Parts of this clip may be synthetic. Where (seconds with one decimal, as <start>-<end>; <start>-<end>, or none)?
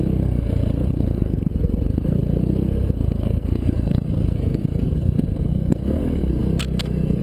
0.0-7.2